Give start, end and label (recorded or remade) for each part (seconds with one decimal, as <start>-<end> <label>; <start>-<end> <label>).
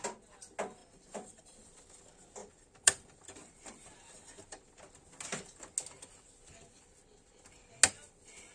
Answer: 0.0-0.8 recorded; 0.8-2.0 remade; 2.0-2.4 recorded; 2.4-4.9 remade; 4.9-8.5 recorded